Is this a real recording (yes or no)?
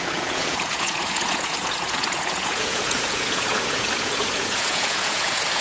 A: no